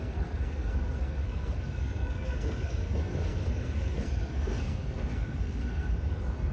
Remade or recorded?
remade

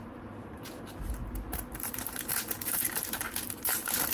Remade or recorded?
remade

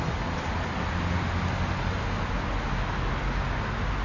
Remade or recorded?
recorded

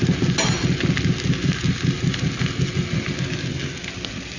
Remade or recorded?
recorded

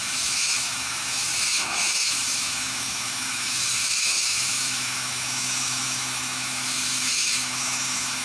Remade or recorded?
remade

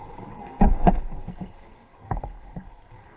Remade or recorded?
remade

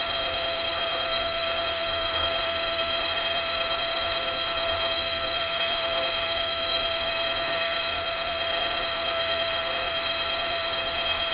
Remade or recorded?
remade